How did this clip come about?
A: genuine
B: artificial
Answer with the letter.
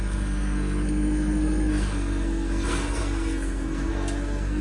B